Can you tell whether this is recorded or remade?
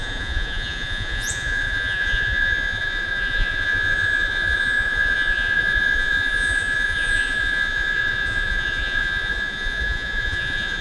remade